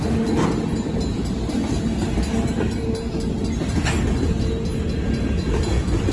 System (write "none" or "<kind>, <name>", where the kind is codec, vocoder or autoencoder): none